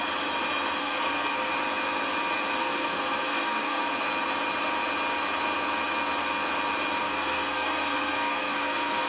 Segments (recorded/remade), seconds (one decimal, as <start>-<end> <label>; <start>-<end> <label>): 0.0-0.8 recorded; 0.8-1.5 remade; 1.5-2.6 recorded; 2.6-3.8 remade; 3.8-7.0 recorded; 7.0-9.1 remade

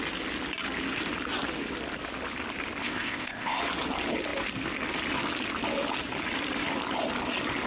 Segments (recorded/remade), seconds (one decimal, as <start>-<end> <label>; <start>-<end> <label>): 0.0-2.8 recorded; 2.8-3.6 remade; 3.6-7.7 recorded

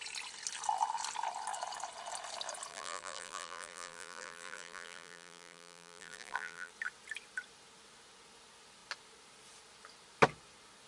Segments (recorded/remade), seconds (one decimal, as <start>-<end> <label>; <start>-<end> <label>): 0.0-2.7 recorded; 2.7-6.7 remade; 6.7-10.9 recorded

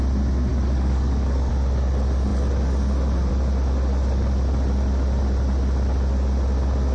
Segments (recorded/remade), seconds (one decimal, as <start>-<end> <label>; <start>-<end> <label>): 0.0-0.5 recorded; 0.5-1.5 remade; 1.5-6.9 recorded

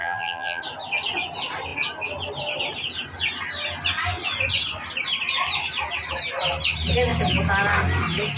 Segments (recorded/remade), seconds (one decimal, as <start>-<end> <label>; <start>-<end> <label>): 0.0-0.6 remade; 0.6-8.4 recorded

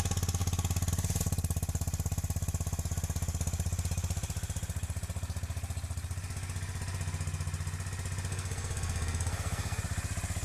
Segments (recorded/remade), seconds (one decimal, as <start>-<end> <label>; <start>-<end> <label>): 0.0-8.3 recorded; 8.3-9.8 remade; 9.8-10.4 recorded

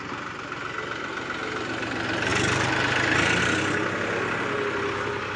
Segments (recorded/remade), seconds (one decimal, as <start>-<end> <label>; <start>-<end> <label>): 0.0-5.4 recorded